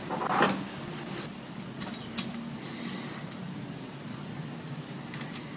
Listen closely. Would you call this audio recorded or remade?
recorded